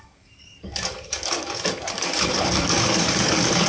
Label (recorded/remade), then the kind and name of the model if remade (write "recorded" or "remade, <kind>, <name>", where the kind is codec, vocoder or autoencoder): remade, codec, DAC